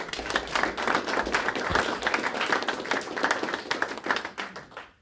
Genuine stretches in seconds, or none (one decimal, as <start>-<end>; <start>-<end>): 0.0-5.0